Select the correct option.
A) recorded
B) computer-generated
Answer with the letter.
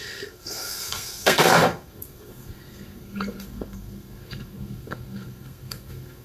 B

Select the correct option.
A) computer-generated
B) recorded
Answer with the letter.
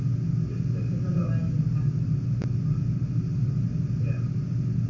B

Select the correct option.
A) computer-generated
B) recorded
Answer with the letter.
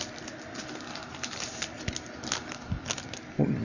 B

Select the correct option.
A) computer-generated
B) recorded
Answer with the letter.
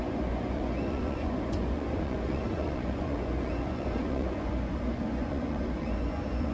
A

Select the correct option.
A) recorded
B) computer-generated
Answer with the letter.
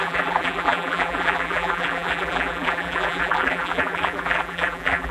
B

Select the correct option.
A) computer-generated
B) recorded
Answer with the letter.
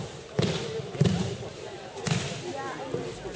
B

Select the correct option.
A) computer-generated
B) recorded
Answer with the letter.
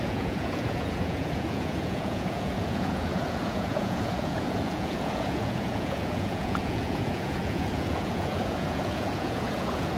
A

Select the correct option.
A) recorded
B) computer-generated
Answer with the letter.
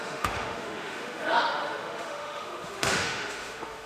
B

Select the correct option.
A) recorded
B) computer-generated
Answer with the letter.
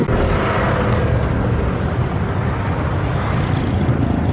A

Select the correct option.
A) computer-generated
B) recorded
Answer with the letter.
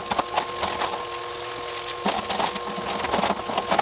B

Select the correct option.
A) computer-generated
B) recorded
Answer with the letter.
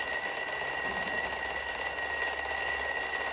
B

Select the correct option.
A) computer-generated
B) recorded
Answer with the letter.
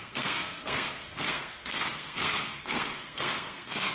A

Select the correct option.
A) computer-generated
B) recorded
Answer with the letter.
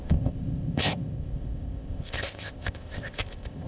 A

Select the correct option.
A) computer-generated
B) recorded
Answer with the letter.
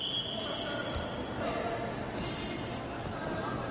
B